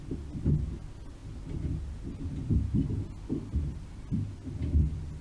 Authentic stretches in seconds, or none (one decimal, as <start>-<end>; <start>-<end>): 0.0-5.2